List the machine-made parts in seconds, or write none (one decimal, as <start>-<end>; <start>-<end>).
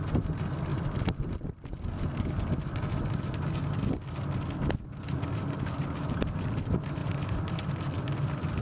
none